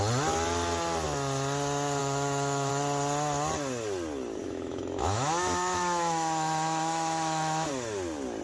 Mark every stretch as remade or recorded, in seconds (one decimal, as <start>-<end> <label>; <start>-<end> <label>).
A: 0.0-2.0 recorded; 2.0-2.7 remade; 2.7-4.4 recorded; 4.4-7.7 remade; 7.7-8.4 recorded